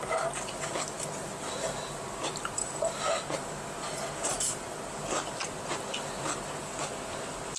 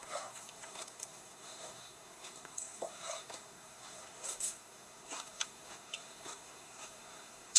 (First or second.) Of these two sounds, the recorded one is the first